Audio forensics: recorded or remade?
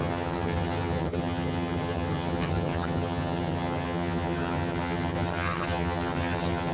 remade